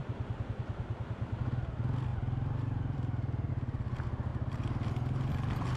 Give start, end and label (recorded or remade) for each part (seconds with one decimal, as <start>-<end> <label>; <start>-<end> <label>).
0.0-2.1 recorded; 2.1-3.5 remade; 3.5-5.8 recorded